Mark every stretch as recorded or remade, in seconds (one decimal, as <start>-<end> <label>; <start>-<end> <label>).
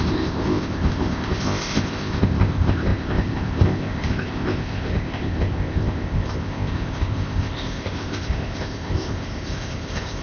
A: 0.0-10.2 remade